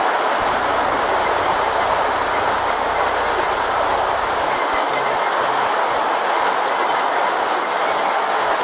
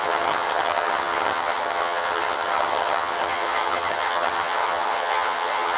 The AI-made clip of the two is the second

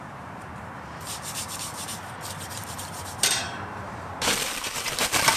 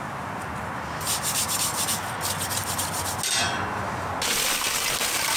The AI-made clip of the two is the first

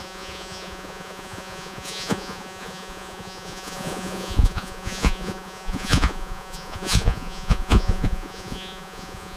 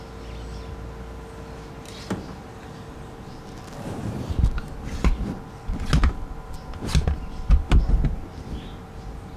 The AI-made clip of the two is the first